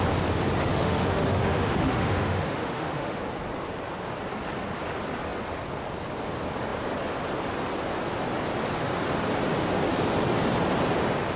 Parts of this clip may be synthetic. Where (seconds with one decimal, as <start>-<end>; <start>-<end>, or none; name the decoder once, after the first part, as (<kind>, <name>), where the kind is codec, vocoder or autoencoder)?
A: 0.7-3.2 (autoencoder, DAC-VAE)